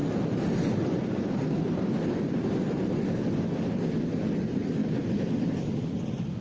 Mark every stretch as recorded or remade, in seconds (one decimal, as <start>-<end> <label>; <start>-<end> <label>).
0.0-3.6 remade; 3.6-4.8 recorded; 4.8-5.6 remade; 5.6-6.4 recorded